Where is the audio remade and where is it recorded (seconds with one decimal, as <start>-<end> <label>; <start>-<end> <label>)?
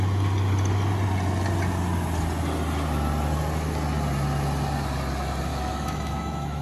0.0-5.5 recorded; 5.5-6.6 remade